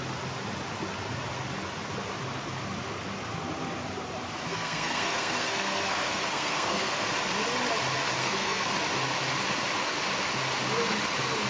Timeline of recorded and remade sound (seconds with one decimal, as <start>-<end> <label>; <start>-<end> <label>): 0.0-4.5 recorded; 4.5-7.1 remade; 7.1-8.2 recorded; 8.2-8.7 remade; 8.7-11.5 recorded